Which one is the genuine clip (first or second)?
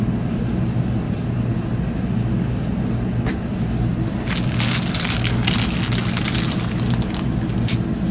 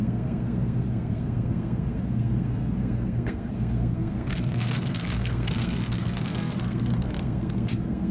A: first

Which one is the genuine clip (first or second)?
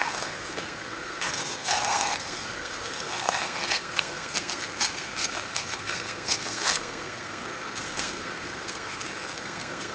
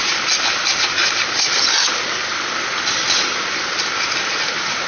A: second